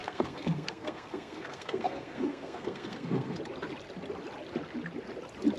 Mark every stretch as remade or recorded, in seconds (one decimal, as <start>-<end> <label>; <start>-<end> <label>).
0.0-3.4 remade; 3.4-5.6 recorded